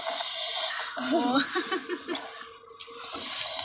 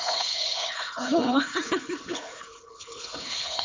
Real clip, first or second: first